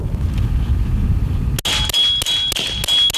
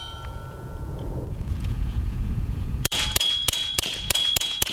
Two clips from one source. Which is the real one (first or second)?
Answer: first